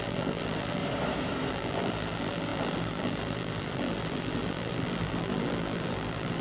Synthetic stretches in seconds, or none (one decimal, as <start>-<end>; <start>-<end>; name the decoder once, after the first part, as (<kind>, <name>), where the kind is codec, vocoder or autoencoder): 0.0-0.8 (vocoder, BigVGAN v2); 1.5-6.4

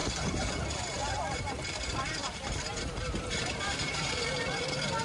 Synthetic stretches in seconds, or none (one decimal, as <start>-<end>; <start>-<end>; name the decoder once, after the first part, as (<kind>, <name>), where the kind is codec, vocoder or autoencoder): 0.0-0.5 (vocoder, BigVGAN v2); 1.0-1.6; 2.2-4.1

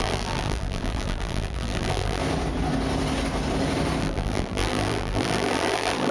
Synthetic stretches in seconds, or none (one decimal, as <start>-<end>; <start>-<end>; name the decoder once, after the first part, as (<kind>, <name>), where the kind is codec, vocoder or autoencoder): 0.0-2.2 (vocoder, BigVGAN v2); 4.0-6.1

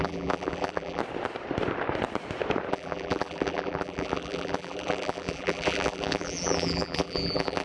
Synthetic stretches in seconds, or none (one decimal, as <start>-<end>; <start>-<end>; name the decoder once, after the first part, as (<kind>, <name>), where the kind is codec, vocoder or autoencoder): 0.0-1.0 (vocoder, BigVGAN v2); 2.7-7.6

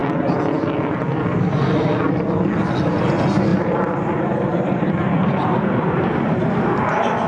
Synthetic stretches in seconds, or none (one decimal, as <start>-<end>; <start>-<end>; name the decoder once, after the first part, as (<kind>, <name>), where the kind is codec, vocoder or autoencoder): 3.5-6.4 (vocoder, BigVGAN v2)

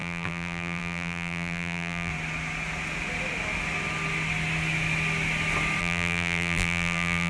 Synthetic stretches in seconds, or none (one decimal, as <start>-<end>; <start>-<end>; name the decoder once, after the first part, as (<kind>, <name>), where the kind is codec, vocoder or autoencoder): 0.0-2.1 (vocoder, BigVGAN v2); 5.8-7.3

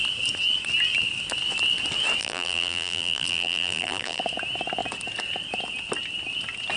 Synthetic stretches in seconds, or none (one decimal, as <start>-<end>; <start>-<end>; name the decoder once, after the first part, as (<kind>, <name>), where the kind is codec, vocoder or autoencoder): 2.2-4.2 (vocoder, BigVGAN v2)